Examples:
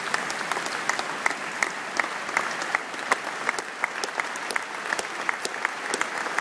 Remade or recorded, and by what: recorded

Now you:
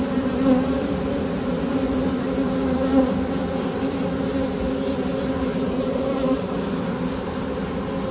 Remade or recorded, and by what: recorded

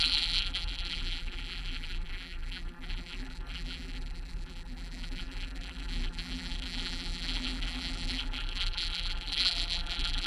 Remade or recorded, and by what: remade, vocoder, BigVGAN v2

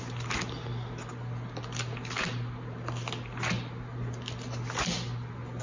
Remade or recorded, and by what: recorded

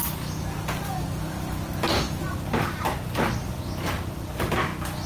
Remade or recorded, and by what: recorded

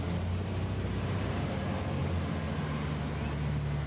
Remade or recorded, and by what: recorded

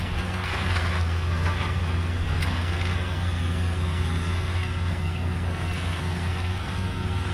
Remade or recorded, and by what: remade, codec, SNAC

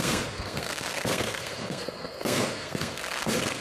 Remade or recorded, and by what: remade, codec, SNAC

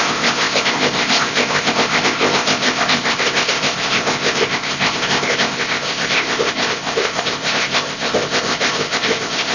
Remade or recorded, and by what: remade, codec, ZipCodec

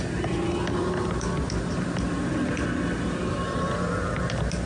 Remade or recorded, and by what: recorded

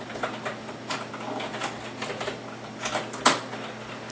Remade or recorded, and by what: recorded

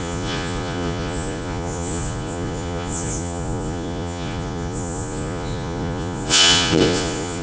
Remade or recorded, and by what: remade, vocoder, Vocos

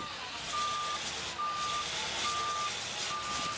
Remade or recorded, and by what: recorded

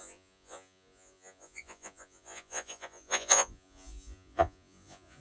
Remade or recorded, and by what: remade, vocoder, Vocos